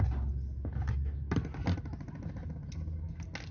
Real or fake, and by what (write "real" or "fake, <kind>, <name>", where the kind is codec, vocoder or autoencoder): real